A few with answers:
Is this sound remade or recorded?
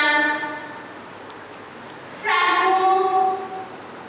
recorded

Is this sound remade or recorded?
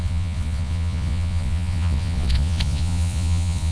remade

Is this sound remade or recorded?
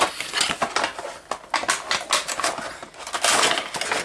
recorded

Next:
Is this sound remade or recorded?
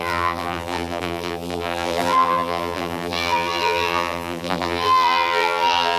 remade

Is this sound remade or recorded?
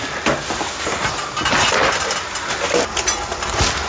recorded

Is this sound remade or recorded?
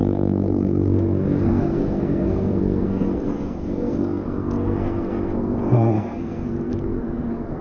remade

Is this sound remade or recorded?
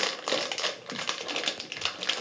recorded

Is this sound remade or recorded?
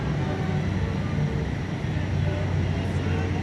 recorded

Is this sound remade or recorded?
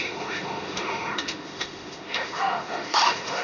remade